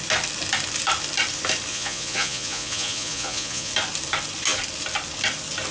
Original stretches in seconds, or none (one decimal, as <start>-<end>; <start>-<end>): 0.0-1.7; 3.7-5.7